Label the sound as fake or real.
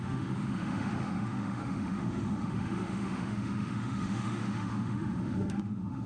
fake